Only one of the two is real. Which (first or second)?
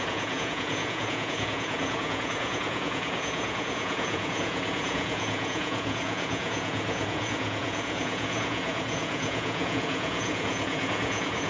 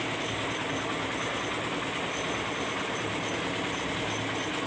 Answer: second